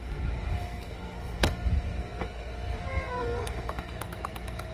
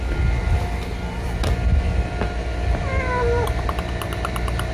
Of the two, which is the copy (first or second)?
first